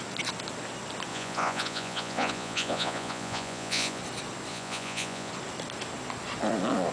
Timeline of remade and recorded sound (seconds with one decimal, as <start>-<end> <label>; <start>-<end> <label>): 0.0-1.1 recorded; 1.1-4.0 remade; 4.0-4.5 recorded; 4.5-5.3 remade; 5.3-6.9 recorded